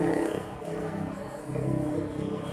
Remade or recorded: remade